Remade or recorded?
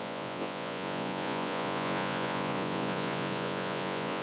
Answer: remade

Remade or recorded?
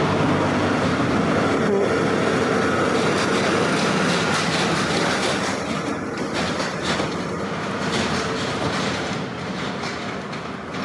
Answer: recorded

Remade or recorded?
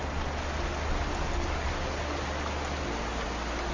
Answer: recorded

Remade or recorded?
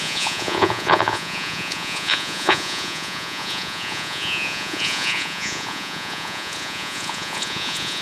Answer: remade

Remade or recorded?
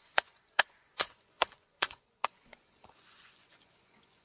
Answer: remade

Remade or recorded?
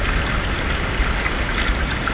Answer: recorded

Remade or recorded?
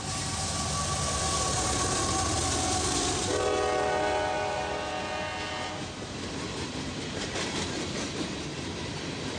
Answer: recorded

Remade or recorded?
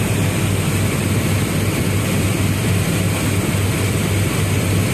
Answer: recorded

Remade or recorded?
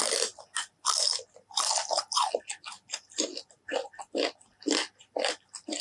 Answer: recorded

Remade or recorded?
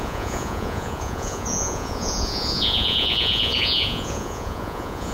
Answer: remade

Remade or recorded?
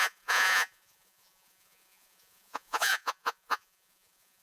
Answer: remade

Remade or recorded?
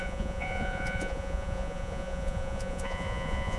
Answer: remade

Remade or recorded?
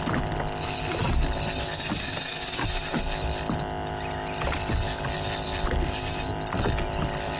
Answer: recorded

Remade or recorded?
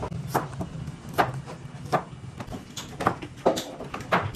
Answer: recorded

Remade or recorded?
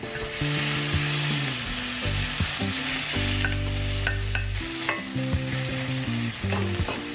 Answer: recorded